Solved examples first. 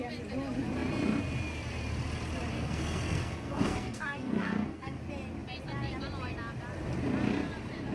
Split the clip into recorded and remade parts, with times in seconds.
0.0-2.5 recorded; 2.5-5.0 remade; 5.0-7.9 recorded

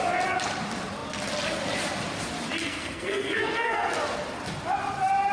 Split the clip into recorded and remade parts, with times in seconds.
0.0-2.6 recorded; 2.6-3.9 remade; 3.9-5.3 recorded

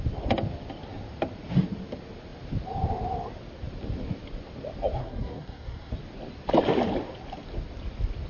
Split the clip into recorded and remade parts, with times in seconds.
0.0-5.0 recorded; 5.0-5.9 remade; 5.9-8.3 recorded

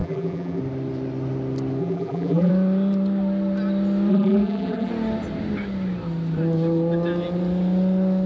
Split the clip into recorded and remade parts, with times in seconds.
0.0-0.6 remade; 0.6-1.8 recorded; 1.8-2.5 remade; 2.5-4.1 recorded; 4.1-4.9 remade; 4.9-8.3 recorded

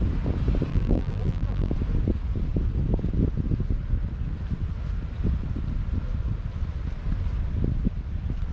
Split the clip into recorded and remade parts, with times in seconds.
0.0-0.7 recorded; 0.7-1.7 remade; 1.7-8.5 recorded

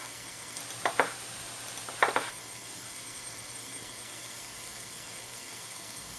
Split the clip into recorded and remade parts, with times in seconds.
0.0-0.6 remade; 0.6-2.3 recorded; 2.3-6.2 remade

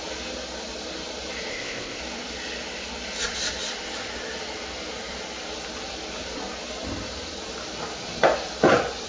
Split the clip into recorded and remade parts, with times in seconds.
0.0-1.5 recorded; 1.5-2.0 remade; 2.0-9.1 recorded